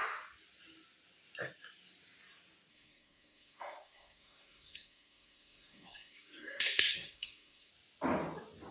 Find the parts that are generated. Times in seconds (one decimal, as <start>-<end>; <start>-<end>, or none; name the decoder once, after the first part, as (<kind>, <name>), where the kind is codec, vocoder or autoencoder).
2.7-7.7 (codec, SNAC)